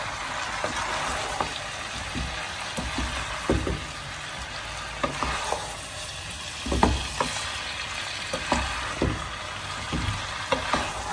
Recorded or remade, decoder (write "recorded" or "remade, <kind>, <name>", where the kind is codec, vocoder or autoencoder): recorded